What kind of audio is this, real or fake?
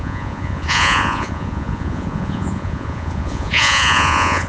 fake